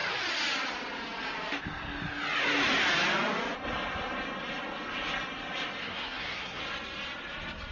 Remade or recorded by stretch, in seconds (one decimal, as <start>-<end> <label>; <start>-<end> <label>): 0.0-5.8 recorded; 5.8-6.6 remade; 6.6-7.7 recorded